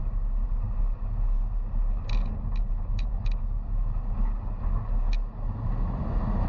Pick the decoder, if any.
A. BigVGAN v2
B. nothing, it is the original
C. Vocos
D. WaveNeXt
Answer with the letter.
B